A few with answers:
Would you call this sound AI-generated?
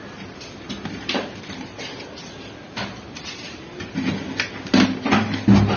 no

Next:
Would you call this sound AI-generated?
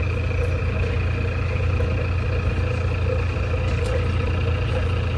no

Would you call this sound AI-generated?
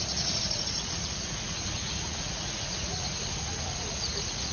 yes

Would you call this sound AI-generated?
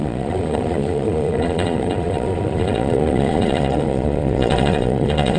yes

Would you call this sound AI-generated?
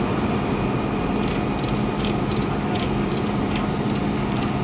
no